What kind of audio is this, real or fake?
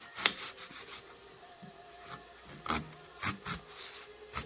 real